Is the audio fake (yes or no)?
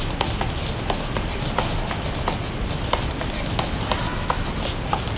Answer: no